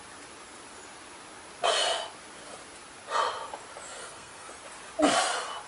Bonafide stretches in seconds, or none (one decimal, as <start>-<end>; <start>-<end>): 0.0-4.0; 4.5-5.7